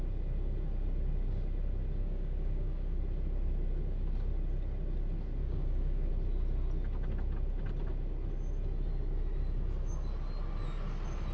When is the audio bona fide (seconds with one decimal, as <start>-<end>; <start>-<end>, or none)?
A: 0.0-2.0; 3.0-5.4; 6.1-11.3

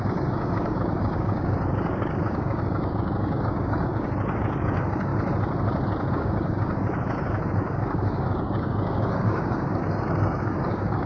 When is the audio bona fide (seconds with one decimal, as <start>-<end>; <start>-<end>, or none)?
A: 5.1-6.1